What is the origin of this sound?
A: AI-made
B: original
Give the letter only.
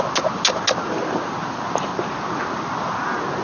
B